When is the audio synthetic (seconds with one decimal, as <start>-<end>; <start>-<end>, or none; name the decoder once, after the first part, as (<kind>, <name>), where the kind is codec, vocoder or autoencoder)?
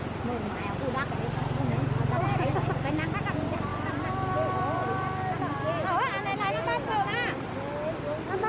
none